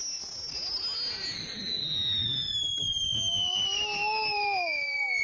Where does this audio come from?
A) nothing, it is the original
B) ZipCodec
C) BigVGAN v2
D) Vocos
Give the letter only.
A